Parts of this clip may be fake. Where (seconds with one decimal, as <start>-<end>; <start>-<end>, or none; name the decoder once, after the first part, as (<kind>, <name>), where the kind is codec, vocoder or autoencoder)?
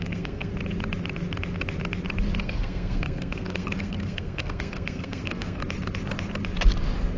0.0-0.5 (codec, SNAC); 2.4-5.6